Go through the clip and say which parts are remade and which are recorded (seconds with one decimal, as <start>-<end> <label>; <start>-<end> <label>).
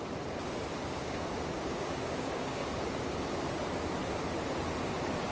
0.0-0.8 recorded; 0.8-2.7 remade; 2.7-5.3 recorded